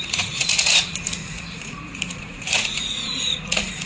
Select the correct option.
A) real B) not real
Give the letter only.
B